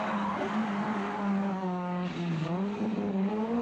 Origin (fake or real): fake